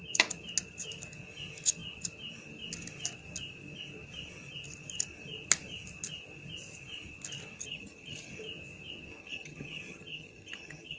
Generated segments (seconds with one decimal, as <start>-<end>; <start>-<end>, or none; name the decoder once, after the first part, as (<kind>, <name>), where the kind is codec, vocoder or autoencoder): 7.6-8.3 (vocoder, HiFi-GAN); 9.2-11.0